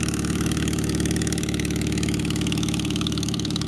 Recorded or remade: remade